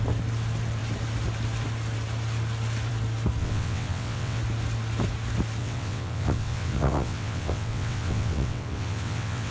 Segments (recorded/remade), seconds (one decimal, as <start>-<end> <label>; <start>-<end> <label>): 0.0-3.4 recorded; 3.4-4.4 remade; 4.4-5.6 recorded; 5.6-9.5 remade